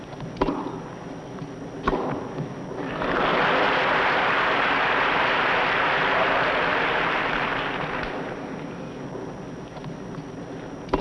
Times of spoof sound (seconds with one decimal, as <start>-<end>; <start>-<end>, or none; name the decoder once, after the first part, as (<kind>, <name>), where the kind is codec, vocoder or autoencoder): none